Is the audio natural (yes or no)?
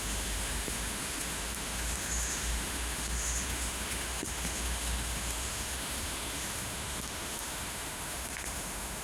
no